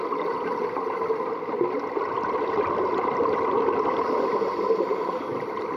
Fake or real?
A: fake